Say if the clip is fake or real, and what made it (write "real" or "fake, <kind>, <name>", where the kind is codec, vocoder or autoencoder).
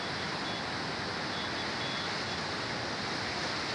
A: real